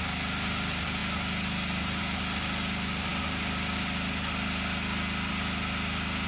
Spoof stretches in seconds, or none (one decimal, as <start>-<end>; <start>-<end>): none